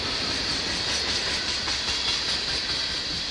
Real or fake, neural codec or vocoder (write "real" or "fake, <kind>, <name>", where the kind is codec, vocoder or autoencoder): real